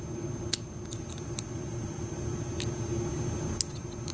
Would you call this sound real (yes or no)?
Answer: yes